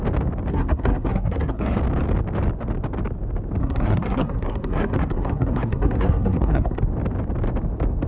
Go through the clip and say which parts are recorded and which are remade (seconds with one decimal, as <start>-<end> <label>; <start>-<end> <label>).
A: 0.0-0.5 recorded; 0.5-1.8 remade; 1.8-3.6 recorded; 3.6-6.8 remade; 6.8-8.1 recorded